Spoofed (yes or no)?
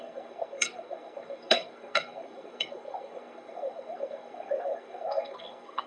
yes